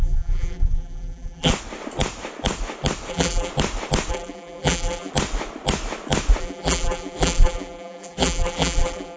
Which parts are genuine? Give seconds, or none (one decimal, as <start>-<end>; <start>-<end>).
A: 1.5-3.1; 3.5-4.1; 5.1-6.4